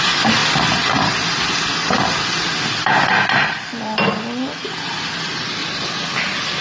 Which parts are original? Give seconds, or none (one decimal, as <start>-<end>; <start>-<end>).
0.0-6.6